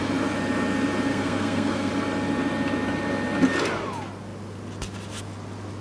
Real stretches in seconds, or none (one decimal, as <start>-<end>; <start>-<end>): 0.0-1.1; 1.9-5.8